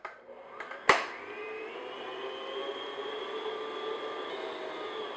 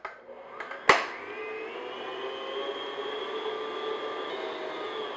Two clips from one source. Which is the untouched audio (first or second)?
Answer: second